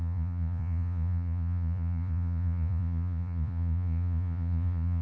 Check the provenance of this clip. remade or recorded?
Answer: remade